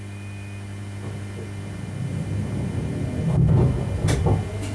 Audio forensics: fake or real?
real